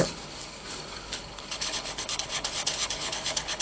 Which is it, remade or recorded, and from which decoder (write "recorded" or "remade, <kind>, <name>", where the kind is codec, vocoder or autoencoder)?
remade, codec, HILCodec